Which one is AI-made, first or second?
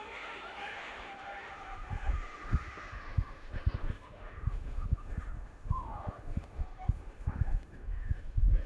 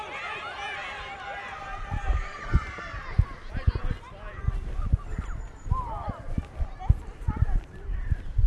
first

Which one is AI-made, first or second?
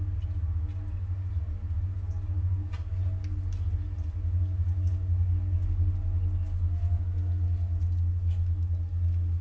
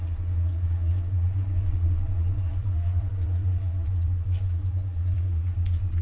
second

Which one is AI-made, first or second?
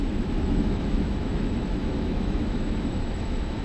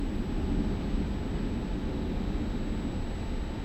first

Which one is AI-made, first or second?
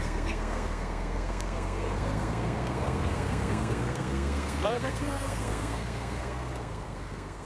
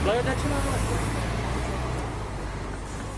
first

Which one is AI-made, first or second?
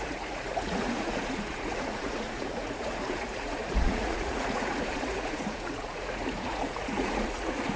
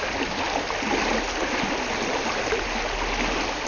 first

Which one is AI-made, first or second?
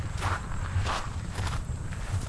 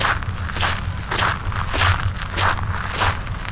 first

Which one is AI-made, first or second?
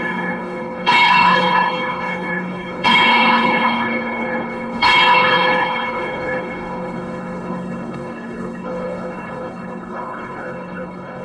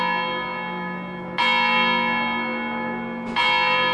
first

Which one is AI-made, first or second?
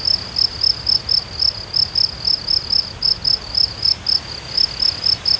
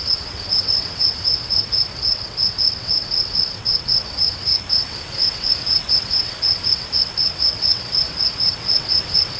second